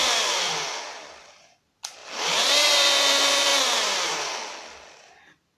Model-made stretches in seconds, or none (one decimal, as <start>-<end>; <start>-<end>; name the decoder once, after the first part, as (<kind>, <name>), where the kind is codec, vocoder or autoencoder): 0.0-0.6 (vocoder, BigVGAN v2); 2.0-3.0